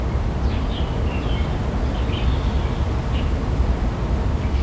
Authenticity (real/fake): real